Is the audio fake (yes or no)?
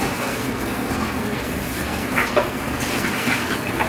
yes